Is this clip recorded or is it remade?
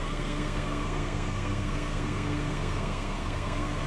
remade